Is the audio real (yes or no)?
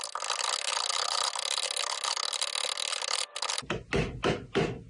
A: yes